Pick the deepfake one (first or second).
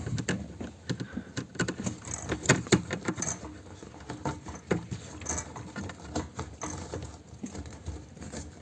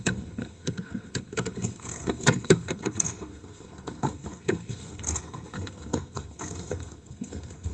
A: second